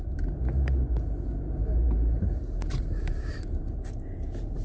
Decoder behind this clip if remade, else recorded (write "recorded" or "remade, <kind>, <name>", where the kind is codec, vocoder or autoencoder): remade, vocoder, BigVGAN v2